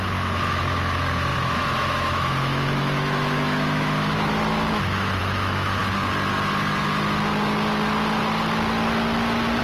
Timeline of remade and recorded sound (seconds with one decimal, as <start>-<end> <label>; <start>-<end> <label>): 0.0-5.8 remade; 5.8-9.6 recorded